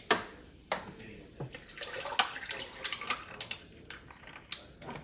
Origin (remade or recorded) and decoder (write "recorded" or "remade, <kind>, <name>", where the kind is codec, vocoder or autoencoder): recorded